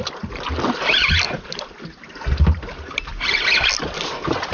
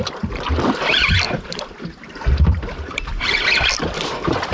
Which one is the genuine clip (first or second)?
first